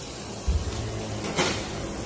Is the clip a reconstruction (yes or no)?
no